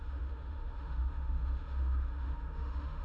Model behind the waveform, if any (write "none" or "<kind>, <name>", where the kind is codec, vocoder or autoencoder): autoencoder, DAC-VAE